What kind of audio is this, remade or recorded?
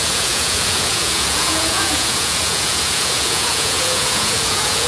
remade